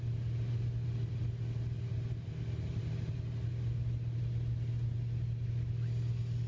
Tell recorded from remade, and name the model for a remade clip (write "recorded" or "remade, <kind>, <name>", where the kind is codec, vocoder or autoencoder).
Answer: recorded